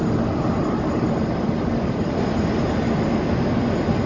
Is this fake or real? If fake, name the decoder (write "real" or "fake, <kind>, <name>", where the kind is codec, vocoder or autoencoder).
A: real